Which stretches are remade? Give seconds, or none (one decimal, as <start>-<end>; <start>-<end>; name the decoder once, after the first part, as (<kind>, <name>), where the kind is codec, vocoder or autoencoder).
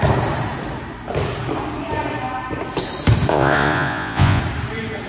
3.3-4.4 (vocoder, Vocos)